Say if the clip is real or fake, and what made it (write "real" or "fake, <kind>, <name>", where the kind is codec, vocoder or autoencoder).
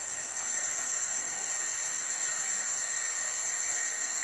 fake, codec, SNAC